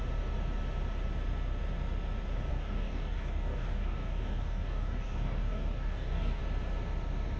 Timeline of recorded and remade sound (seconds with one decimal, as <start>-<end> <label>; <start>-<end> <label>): 0.0-2.5 recorded; 2.5-6.4 remade; 6.4-7.4 recorded